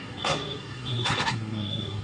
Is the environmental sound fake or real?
fake